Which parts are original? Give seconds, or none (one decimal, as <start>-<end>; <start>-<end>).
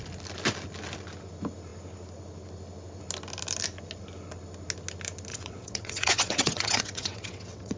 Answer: 0.0-5.3